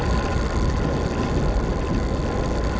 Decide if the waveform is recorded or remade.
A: recorded